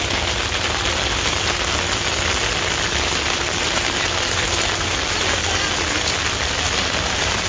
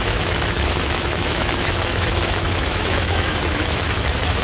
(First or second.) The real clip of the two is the first